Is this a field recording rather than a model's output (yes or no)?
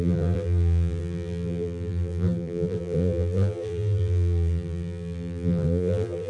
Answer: no